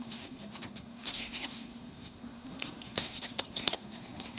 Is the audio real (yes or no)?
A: no